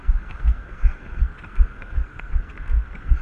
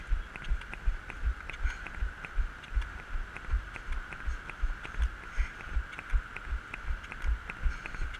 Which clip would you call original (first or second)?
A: second